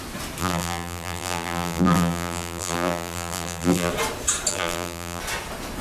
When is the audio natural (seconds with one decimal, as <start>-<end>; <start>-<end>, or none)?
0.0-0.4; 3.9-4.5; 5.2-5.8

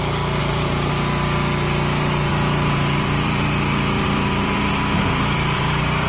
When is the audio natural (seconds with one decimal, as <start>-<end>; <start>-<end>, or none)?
0.0-0.4; 0.9-2.3

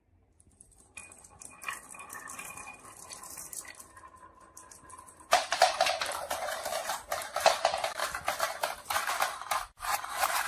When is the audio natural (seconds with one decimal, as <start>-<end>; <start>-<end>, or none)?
1.0-5.1; 8.0-9.1

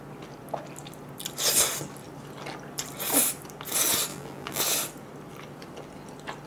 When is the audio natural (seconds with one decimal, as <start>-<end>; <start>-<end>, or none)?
0.0-4.1; 4.6-6.5